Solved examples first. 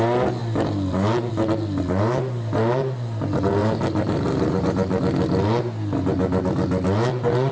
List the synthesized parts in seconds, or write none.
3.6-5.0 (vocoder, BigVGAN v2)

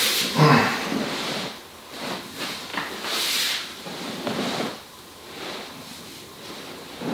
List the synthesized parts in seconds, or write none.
0.7-1.6 (vocoder, BigVGAN v2); 2.7-7.1

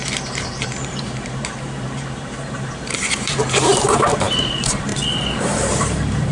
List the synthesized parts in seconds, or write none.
0.0-4.9 (vocoder, BigVGAN v2); 5.4-6.3

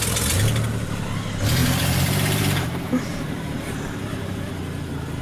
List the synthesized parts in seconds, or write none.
1.6-4.5 (vocoder, BigVGAN v2)

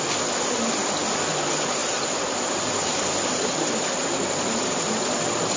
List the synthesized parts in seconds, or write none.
1.8-4.7 (vocoder, BigVGAN v2)

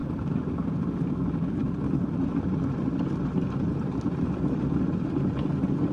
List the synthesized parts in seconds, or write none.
0.0-1.1 (vocoder, BigVGAN v2)

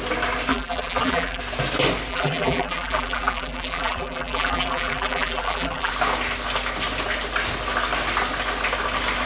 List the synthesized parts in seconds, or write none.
0.5-1.4 (vocoder, BigVGAN v2); 2.1-5.9